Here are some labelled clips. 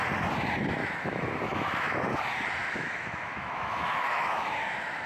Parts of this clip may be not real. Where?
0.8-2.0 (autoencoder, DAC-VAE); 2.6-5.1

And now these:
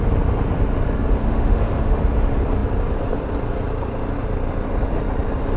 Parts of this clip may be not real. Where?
1.2-2.0 (autoencoder, DAC-VAE)